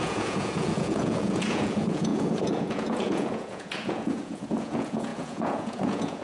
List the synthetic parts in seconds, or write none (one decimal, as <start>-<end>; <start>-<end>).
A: 0.0-6.2